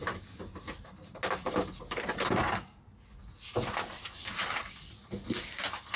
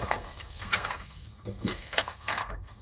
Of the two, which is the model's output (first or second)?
second